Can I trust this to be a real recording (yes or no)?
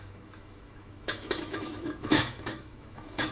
no